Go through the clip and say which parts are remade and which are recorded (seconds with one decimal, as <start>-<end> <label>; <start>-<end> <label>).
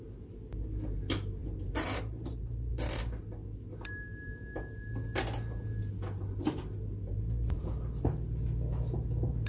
0.0-1.4 recorded; 1.4-3.0 remade; 3.0-9.5 recorded